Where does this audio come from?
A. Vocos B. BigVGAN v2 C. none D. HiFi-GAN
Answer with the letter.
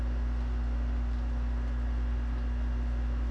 C